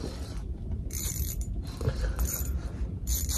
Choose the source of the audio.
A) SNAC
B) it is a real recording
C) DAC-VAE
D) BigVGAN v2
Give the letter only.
D